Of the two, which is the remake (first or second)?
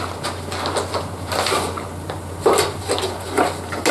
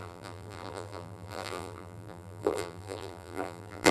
second